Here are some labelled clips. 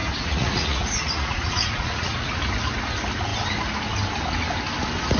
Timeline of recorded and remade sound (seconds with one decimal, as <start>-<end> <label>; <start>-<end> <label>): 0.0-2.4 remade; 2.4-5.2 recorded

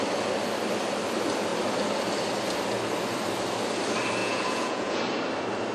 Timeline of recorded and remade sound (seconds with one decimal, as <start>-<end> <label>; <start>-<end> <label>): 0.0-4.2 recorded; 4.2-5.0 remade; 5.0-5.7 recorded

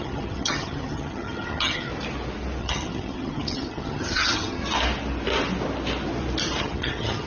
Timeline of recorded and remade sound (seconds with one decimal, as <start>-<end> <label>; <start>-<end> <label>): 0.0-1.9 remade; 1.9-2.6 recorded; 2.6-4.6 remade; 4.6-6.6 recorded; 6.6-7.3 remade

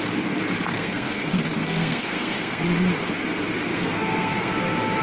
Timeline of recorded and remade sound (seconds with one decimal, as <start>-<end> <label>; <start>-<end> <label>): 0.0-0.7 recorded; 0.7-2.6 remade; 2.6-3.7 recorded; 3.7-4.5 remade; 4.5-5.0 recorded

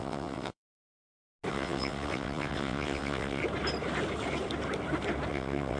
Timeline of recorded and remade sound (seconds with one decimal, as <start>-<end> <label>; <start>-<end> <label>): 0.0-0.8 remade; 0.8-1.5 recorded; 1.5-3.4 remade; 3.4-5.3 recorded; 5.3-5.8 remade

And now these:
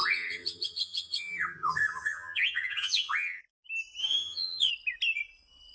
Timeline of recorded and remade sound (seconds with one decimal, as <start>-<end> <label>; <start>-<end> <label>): 0.0-3.4 remade; 3.4-4.0 recorded; 4.0-4.7 remade; 4.7-5.7 recorded